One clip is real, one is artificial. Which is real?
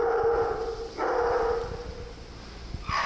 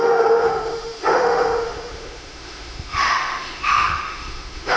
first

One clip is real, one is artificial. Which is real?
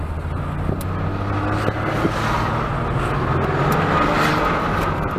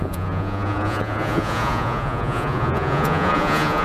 first